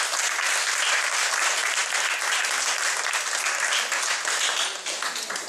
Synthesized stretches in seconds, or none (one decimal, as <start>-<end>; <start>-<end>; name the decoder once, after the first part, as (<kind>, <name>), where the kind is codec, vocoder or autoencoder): none